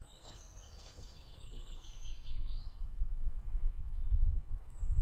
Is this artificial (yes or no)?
yes